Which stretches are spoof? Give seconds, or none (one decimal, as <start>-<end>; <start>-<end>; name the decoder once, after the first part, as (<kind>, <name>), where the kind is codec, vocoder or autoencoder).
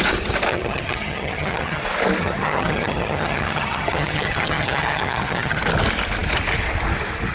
0.5-1.8 (vocoder, HiFi-GAN); 2.2-5.6